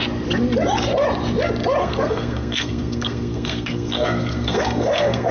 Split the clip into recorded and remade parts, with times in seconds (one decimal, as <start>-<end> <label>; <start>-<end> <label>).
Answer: 0.0-1.8 recorded; 1.8-5.3 remade